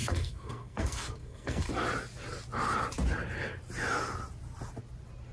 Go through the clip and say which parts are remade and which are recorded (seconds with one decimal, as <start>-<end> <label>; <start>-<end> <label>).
0.0-1.7 remade; 1.7-5.3 recorded